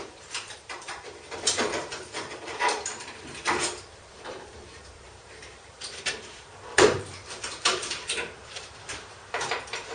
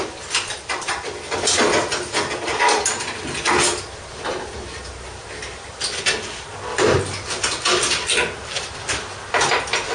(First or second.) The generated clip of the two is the first